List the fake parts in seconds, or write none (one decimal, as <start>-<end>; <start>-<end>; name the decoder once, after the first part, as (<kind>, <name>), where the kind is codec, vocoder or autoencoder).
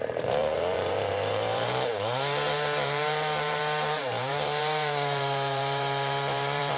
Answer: 0.0-6.8 (vocoder, BigVGAN v2)